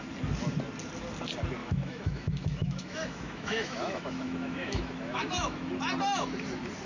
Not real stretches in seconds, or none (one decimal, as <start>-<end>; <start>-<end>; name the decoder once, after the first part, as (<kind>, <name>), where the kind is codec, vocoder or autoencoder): 1.6-5.7 (autoencoder, DAC-VAE)